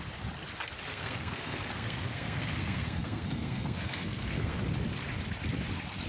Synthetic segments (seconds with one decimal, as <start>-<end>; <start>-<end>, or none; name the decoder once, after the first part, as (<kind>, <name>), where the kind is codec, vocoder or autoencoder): 0.9-4.6 (codec, SNAC)